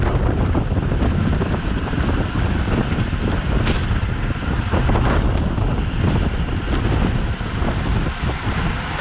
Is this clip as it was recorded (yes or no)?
yes